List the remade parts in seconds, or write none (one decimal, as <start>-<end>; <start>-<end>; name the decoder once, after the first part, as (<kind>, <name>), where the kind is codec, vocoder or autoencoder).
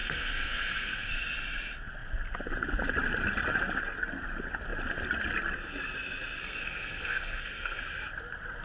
0.0-1.1 (codec, SNAC); 6.4-7.8